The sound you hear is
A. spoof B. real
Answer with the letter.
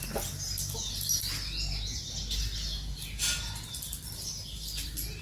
B